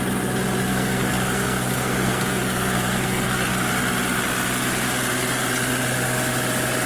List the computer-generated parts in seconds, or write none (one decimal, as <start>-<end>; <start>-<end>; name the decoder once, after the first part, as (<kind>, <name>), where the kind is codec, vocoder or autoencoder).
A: 0.7-3.5 (codec, SNAC)